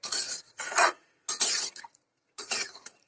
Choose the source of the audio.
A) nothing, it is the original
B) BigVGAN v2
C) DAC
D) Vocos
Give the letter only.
D